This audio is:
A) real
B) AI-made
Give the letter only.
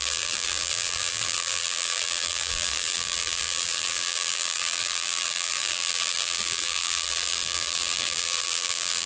B